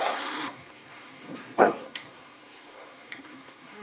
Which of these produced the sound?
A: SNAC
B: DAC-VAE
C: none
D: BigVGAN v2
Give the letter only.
A